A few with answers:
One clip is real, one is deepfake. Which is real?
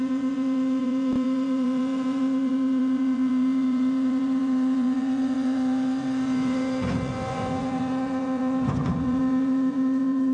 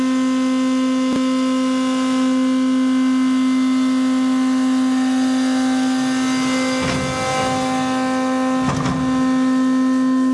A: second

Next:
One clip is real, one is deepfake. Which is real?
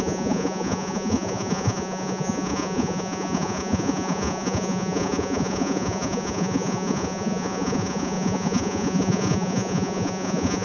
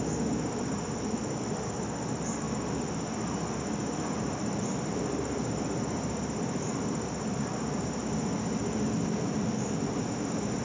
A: second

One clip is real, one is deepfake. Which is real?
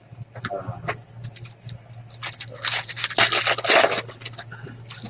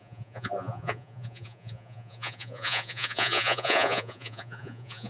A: first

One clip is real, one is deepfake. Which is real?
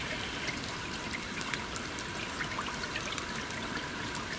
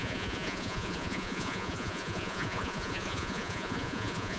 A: first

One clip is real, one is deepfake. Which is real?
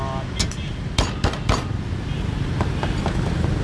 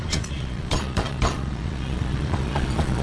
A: first